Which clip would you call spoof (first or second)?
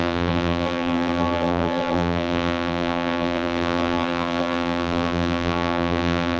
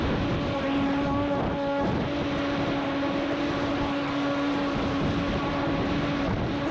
first